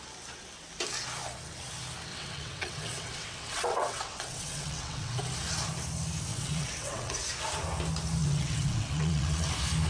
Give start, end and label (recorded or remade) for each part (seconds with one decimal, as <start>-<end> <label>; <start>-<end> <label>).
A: 0.0-2.1 recorded; 2.1-5.2 remade; 5.2-6.3 recorded; 6.3-7.1 remade; 7.1-8.2 recorded; 8.2-9.5 remade; 9.5-9.9 recorded